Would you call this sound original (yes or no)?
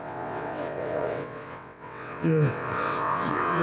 no